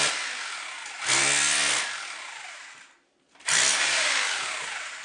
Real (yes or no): yes